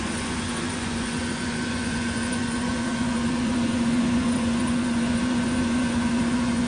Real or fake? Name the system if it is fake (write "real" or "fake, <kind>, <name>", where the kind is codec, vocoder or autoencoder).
fake, vocoder, Vocos